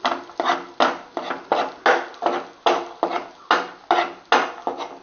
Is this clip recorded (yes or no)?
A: yes